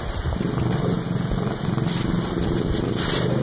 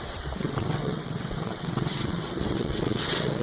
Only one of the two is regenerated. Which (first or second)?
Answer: second